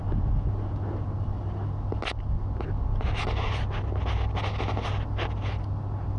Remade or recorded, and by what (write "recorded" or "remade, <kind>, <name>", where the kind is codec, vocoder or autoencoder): recorded